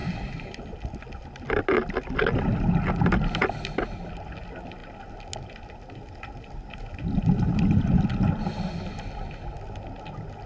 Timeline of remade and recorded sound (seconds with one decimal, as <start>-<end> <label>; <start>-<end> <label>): 0.0-10.5 recorded